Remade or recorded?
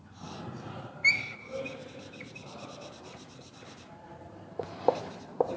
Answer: remade